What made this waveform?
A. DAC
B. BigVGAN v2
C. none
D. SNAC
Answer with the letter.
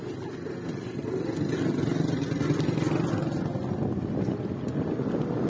C